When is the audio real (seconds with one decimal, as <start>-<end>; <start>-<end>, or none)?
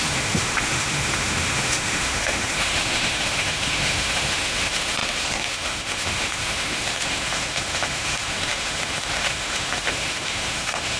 none